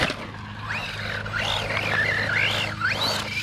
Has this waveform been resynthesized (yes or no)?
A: no